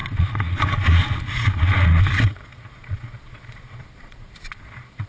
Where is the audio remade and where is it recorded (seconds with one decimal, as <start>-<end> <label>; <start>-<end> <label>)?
0.0-5.1 remade